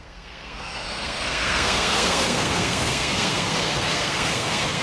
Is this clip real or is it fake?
fake